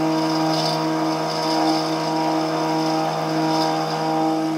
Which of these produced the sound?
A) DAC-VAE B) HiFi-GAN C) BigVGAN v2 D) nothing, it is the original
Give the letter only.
D